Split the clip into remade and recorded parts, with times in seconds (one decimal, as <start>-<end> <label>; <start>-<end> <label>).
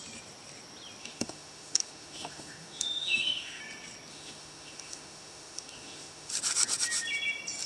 0.0-1.0 recorded; 1.0-3.6 remade; 3.6-4.1 recorded; 4.1-6.3 remade; 6.3-7.7 recorded